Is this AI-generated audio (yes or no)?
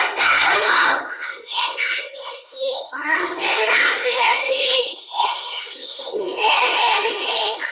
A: yes